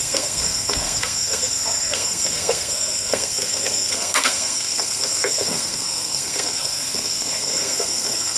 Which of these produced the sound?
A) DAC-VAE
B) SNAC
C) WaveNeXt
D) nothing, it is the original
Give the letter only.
B